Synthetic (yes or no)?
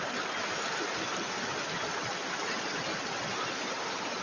no